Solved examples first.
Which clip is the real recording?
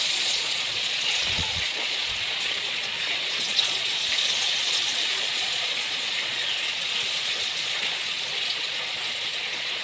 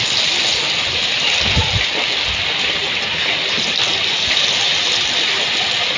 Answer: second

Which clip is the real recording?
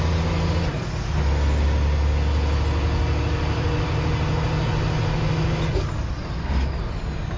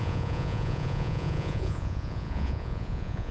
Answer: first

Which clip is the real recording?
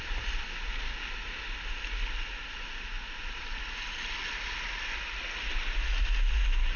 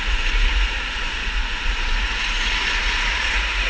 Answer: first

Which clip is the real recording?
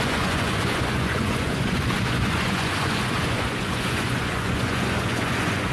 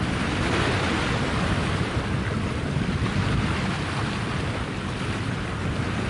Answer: second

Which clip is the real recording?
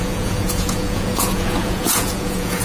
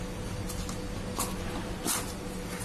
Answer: second